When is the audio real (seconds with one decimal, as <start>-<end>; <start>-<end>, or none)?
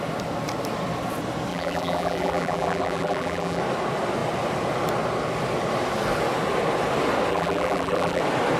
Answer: 0.0-1.5; 3.6-7.3; 8.2-8.6